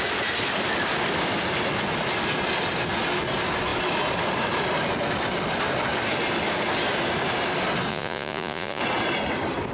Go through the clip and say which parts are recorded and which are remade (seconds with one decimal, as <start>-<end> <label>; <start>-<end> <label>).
0.0-7.9 recorded; 7.9-8.8 remade; 8.8-9.7 recorded